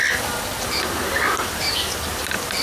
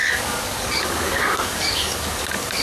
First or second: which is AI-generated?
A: second